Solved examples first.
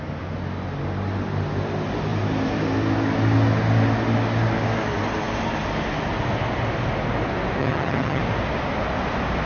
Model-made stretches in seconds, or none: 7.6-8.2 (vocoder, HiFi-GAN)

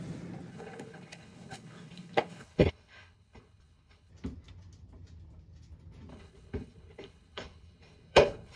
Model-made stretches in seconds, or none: 0.5-4.1 (codec, HILCodec); 6.1-8.6

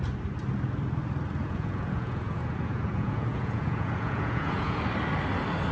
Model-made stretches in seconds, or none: 1.4-4.8 (vocoder, Vocos)

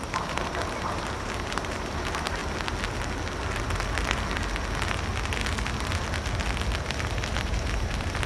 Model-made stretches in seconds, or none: 0.0-2.4 (vocoder, BigVGAN v2); 7.4-8.3

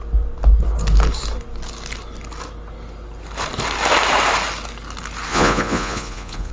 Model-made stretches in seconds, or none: 5.3-6.5 (vocoder, Vocos)

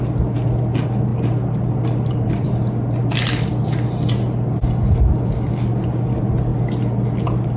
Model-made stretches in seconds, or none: none

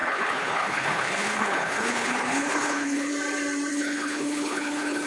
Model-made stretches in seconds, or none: 0.0-3.1 (codec, HILCodec); 3.7-5.1

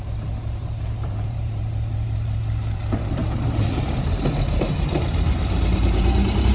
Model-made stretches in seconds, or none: 0.0-6.5 (vocoder, BigVGAN v2)